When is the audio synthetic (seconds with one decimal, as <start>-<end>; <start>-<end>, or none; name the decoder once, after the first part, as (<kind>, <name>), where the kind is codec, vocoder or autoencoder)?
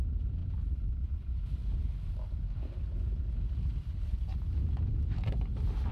none